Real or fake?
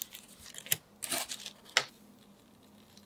real